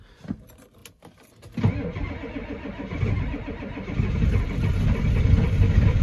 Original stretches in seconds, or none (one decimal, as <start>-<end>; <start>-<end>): 0.0-6.0